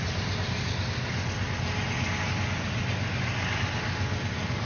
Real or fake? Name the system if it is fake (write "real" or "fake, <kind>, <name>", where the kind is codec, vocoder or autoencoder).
real